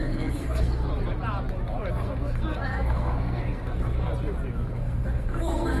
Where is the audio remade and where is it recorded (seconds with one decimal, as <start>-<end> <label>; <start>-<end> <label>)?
0.0-0.9 remade; 0.9-1.9 recorded; 1.9-4.1 remade; 4.1-4.7 recorded; 4.7-5.8 remade